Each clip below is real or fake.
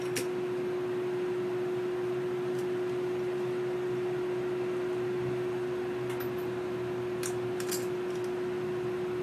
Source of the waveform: real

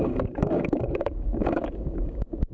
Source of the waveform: fake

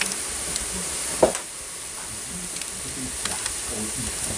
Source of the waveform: real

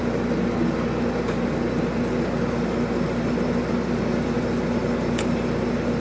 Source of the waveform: real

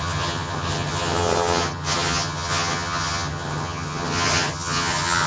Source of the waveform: fake